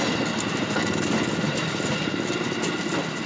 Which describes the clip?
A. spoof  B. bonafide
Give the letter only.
B